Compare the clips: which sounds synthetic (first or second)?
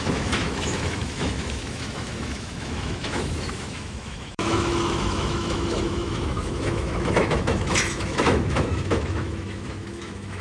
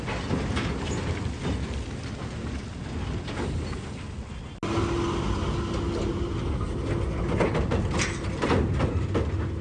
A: first